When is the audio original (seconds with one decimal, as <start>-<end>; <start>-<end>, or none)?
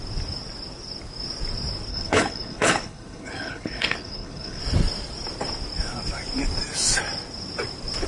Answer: 0.0-1.9; 4.6-8.1